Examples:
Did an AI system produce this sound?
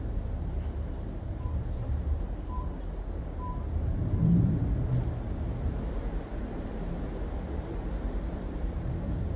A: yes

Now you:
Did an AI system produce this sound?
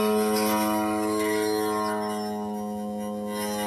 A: no